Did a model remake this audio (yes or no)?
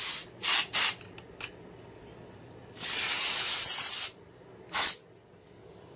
no